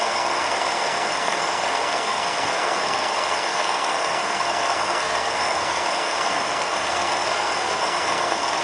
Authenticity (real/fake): fake